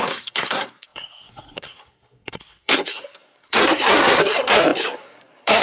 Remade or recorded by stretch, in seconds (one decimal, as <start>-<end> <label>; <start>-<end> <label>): 0.0-5.6 remade